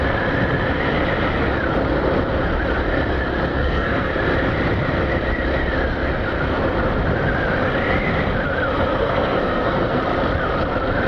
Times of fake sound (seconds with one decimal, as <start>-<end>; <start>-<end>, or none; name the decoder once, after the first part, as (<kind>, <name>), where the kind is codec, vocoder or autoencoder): 3.5-4.1 (codec, SNAC); 8.9-10.0